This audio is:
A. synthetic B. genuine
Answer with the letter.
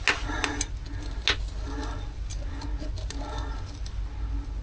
B